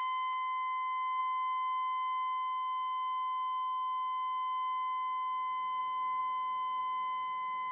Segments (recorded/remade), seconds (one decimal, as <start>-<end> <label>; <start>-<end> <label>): 0.0-7.7 recorded